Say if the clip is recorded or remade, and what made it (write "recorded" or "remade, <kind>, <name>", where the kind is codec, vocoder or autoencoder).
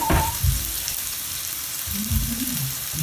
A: remade, vocoder, BigVGAN v2